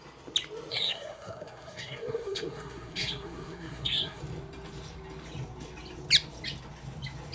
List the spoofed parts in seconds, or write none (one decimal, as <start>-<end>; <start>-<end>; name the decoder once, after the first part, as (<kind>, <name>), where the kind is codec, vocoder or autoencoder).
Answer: 0.7-4.2 (codec, SNAC)